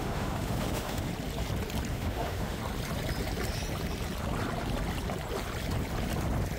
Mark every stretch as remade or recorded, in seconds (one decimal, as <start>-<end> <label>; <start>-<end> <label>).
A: 0.0-1.1 remade; 1.1-1.9 recorded; 1.9-2.6 remade; 2.6-6.6 recorded